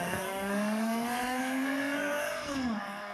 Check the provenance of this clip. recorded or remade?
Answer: remade